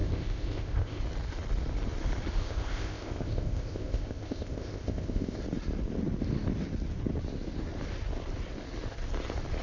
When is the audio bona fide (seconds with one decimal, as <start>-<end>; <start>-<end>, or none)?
1.0-2.4; 5.4-9.6